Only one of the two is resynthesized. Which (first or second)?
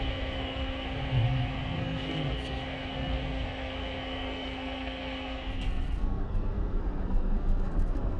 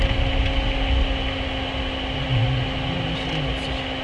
first